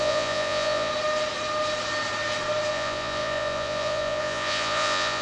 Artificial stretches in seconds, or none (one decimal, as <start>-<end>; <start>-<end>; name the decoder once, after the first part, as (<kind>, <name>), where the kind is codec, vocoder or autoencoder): 0.0-0.9 (vocoder, Vocos); 2.7-5.2